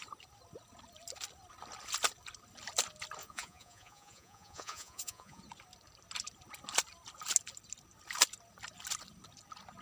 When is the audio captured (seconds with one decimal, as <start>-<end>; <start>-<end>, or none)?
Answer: 0.0-3.2; 5.4-9.8